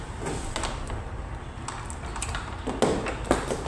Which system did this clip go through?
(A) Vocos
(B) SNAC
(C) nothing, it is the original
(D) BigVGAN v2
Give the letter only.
C